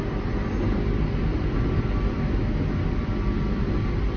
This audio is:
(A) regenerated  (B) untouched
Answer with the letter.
B